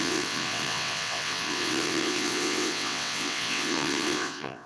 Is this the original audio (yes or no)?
no